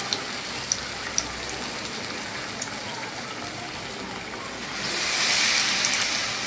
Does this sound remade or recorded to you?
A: recorded